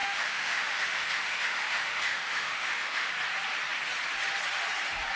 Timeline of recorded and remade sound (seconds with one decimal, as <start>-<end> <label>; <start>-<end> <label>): 0.0-3.1 remade; 3.1-5.2 recorded